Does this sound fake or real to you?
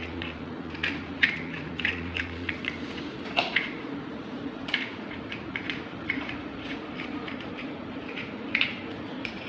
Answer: fake